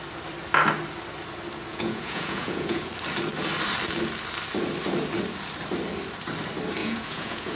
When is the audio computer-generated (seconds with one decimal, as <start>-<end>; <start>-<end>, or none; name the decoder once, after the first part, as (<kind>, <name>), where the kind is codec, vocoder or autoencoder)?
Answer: 1.7-2.9 (vocoder, Vocos); 6.8-7.6